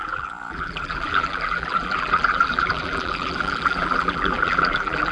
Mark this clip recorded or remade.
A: remade